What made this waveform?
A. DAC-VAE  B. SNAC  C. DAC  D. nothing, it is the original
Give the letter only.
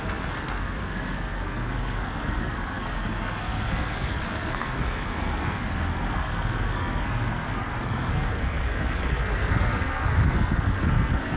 B